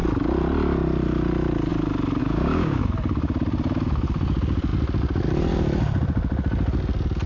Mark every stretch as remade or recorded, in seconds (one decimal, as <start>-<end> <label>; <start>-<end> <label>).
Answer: 0.0-2.2 recorded; 2.2-2.8 remade; 2.8-7.3 recorded